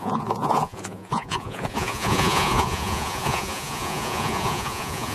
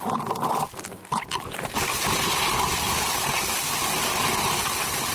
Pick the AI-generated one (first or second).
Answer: first